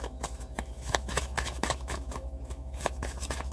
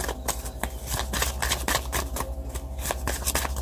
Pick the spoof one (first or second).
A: first